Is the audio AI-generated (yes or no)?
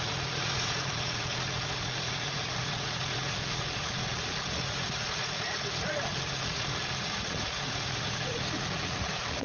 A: yes